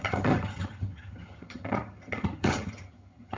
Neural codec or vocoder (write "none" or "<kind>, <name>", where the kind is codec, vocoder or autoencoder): vocoder, HiFi-GAN